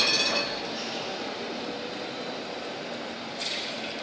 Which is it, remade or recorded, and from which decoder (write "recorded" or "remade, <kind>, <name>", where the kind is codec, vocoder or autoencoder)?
recorded